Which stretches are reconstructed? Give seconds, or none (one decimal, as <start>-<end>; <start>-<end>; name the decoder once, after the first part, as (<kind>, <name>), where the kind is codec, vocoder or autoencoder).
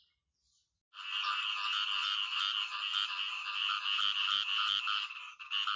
none